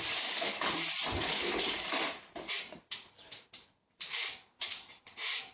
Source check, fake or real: fake